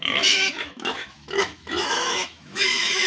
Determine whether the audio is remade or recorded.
remade